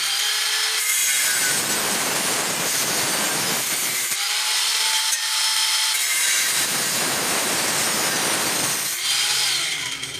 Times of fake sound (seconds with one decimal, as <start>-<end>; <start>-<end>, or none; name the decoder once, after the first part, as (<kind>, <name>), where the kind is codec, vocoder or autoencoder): 0.0-1.0 (vocoder, BigVGAN v2); 1.8-10.2

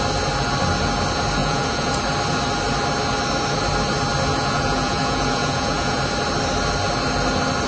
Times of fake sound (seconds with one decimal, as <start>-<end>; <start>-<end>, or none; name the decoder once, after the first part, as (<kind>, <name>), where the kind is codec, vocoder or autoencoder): 1.4-2.0 (vocoder, Vocos); 4.3-6.0

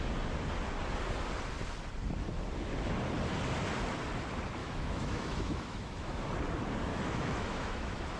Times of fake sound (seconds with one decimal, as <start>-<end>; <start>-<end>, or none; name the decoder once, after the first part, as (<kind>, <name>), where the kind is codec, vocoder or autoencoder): 4.6-6.2 (autoencoder, DAC-VAE); 6.9-8.2

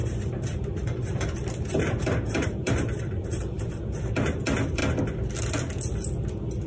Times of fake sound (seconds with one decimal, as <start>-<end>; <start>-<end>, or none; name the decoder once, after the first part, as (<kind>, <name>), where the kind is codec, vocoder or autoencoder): 0.0-4.0 (vocoder, BigVGAN v2)

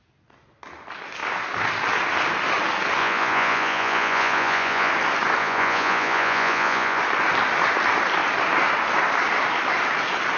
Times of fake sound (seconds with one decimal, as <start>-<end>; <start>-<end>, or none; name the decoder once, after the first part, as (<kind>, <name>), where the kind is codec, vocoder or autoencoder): 3.0-4.9 (vocoder, Vocos); 5.4-7.0